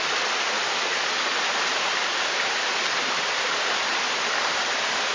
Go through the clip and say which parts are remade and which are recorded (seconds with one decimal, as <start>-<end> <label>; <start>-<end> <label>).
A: 0.0-5.1 recorded